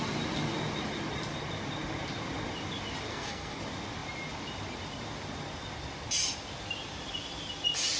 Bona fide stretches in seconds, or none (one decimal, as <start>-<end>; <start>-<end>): 0.0-3.1; 3.6-8.0